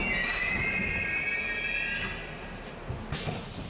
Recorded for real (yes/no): yes